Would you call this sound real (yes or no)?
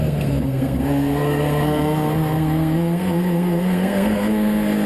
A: no